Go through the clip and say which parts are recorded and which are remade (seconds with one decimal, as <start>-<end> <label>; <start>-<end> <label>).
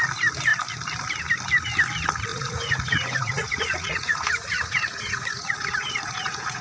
0.0-2.3 recorded; 2.3-6.6 remade